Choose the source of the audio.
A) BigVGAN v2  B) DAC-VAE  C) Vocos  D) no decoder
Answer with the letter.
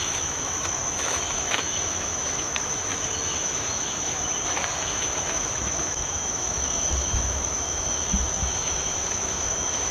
B